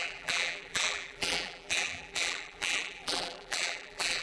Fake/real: fake